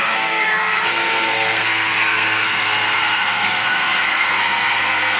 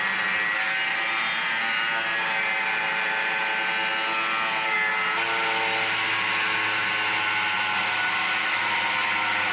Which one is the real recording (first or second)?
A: second